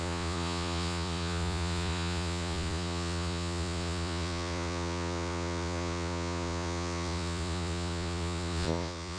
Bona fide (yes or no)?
no